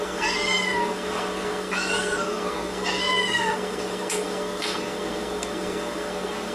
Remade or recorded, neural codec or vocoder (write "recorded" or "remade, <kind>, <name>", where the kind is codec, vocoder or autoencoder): remade, codec, SNAC